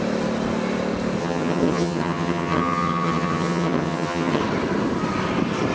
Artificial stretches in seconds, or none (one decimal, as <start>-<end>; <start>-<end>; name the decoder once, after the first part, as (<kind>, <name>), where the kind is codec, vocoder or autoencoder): 1.2-4.4 (vocoder, HiFi-GAN)